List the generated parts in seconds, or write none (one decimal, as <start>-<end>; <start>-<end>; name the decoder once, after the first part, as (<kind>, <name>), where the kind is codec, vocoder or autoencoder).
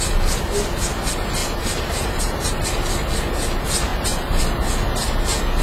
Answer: 1.4-2.5 (vocoder, BigVGAN v2); 3.9-4.4